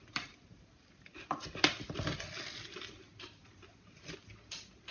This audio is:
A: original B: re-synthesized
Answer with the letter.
A